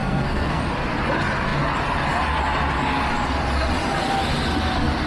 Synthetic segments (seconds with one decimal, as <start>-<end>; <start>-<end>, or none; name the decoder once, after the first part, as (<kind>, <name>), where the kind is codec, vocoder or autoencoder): 0.0-0.6 (codec, SNAC)